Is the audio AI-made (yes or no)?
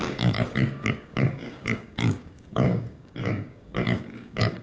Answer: yes